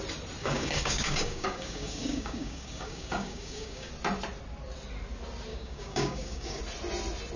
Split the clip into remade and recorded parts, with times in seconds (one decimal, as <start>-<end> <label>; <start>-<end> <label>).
0.0-0.4 recorded; 0.4-3.9 remade; 3.9-5.5 recorded; 5.5-6.6 remade; 6.6-7.4 recorded